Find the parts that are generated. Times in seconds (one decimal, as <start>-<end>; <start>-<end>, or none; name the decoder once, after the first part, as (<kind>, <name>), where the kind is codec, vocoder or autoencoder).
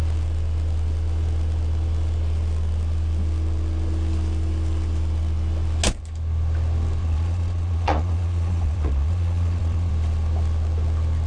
7.0-9.9 (vocoder, Vocos)